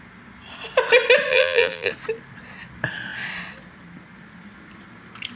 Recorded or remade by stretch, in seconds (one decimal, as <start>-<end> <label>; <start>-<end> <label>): 0.0-1.3 recorded; 1.3-1.9 remade; 1.9-5.4 recorded